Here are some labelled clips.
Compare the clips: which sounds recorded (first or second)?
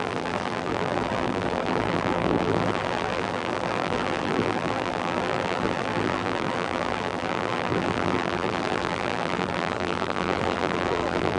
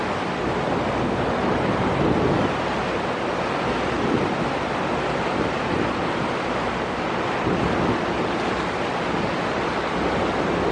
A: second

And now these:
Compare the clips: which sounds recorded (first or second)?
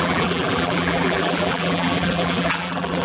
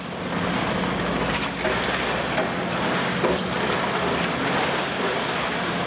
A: second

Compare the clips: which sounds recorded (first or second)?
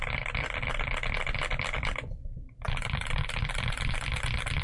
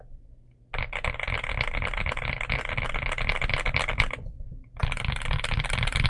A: second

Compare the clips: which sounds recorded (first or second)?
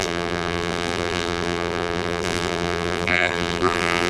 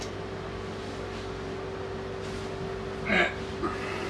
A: second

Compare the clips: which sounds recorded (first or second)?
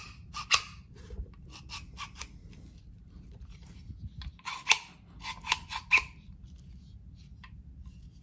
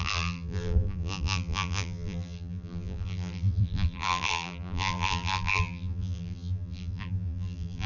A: first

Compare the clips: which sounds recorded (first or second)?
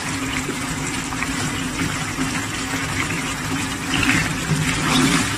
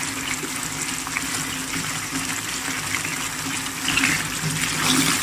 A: second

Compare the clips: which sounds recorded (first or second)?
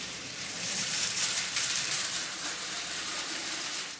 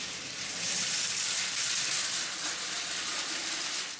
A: second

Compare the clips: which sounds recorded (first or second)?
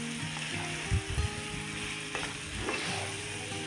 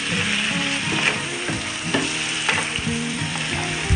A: first